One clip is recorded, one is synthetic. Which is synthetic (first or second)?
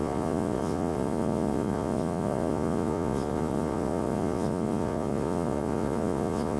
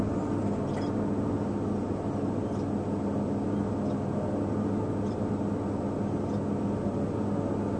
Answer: first